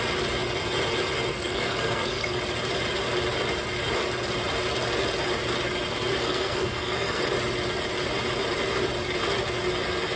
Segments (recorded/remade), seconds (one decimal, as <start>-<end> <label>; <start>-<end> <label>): 0.0-1.3 recorded; 1.3-2.4 remade; 2.4-6.2 recorded; 6.2-7.2 remade; 7.2-10.2 recorded